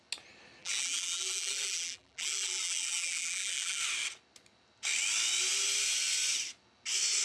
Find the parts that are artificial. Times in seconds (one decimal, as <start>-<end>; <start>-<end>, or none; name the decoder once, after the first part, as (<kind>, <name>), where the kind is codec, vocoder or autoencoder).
0.6-3.8 (vocoder, BigVGAN v2)